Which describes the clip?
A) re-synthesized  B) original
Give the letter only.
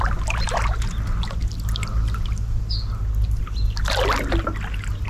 B